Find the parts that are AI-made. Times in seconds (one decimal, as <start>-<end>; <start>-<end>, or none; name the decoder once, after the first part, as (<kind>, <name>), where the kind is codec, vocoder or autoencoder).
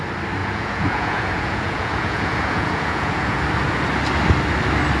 0.4-3.4 (vocoder, Vocos)